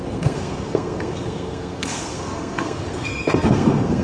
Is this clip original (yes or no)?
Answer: no